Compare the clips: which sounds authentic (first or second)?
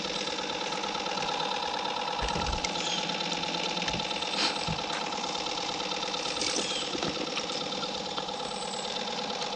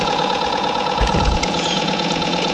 first